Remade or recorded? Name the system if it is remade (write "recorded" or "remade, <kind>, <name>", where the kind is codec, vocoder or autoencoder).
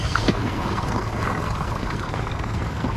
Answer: remade, codec, SNAC